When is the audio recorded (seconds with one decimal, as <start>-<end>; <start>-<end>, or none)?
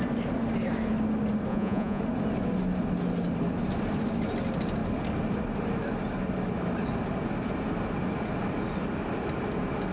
0.0-1.5; 2.0-9.9